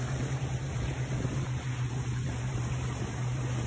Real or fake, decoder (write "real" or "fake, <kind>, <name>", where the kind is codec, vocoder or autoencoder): fake, vocoder, BigVGAN v2